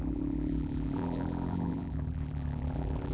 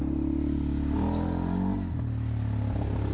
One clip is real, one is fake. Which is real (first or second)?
second